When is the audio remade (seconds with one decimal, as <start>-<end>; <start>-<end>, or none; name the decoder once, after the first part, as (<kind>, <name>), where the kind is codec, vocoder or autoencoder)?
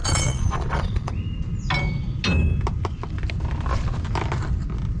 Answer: 0.0-1.1 (vocoder, Vocos)